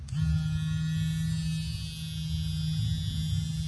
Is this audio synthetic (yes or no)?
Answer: no